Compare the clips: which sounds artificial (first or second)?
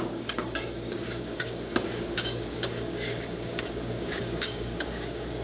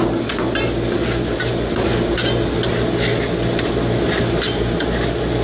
first